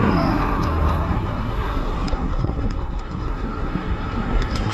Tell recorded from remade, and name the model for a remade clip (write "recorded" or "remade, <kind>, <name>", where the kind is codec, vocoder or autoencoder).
remade, codec, SNAC